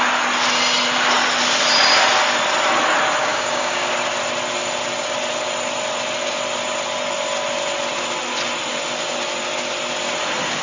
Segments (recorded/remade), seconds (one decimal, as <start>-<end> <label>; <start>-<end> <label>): 0.0-3.2 recorded; 3.2-3.9 remade; 3.9-10.6 recorded